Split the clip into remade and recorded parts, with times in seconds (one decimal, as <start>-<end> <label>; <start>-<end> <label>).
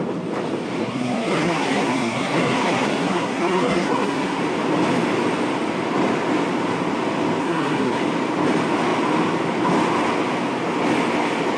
0.0-0.8 recorded; 0.8-4.4 remade; 4.4-7.4 recorded; 7.4-8.0 remade; 8.0-11.6 recorded